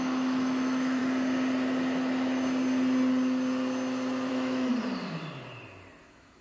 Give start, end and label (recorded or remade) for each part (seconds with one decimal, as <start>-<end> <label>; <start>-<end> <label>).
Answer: 0.0-1.0 remade; 1.0-4.3 recorded; 4.3-4.7 remade; 4.7-6.0 recorded; 6.0-6.4 remade